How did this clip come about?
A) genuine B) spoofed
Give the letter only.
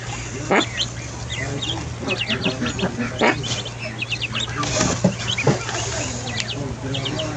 A